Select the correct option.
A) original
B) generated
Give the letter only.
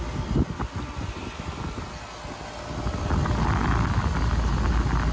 A